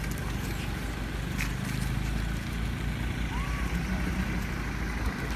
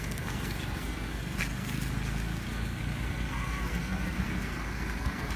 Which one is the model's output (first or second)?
second